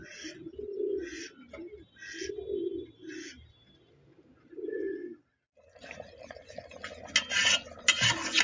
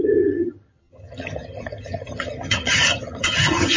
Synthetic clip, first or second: second